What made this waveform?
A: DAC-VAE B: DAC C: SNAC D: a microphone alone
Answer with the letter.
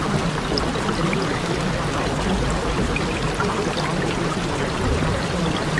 D